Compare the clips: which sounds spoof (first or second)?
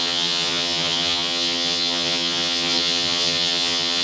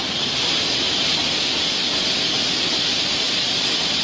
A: first